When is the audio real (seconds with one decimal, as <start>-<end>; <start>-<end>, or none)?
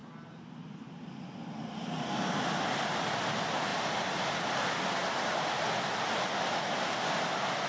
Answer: 0.0-7.7